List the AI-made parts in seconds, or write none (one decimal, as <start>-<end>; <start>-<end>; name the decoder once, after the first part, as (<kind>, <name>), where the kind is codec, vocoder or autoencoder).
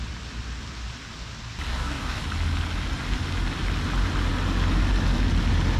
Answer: 1.7-2.2 (codec, DAC)